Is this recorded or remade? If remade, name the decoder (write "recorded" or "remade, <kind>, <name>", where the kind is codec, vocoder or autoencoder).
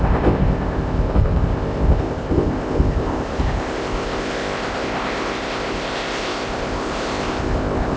remade, codec, ZipCodec